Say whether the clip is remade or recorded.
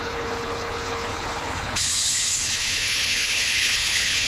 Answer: remade